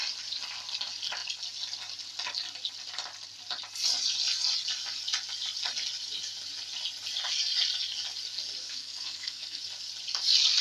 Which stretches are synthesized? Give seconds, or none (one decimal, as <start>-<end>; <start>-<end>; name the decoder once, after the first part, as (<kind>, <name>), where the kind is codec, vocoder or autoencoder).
8.6-9.6 (codec, SNAC)